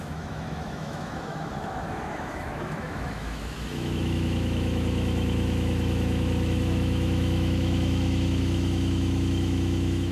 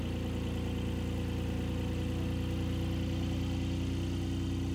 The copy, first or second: first